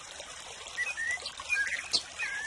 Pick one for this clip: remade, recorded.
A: remade